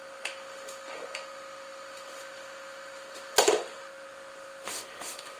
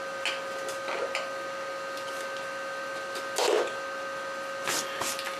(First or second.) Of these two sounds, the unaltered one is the second